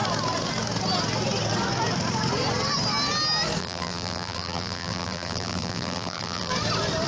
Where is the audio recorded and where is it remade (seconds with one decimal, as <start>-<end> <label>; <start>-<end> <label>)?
0.0-3.6 recorded; 3.6-6.5 remade; 6.5-7.1 recorded